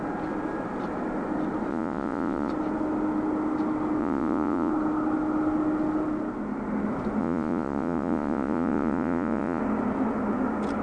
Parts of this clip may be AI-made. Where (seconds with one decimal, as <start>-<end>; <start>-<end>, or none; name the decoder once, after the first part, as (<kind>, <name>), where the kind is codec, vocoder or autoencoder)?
1.7-2.5 (vocoder, Vocos); 4.0-4.7; 7.2-9.6